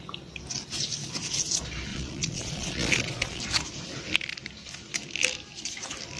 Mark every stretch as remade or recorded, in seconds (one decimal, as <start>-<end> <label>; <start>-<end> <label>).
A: 0.0-1.9 recorded; 1.9-3.4 remade; 3.4-6.2 recorded